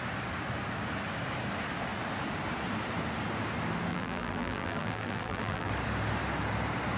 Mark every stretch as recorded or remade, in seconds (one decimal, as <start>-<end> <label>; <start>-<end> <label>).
0.0-3.9 recorded; 3.9-5.7 remade; 5.7-7.0 recorded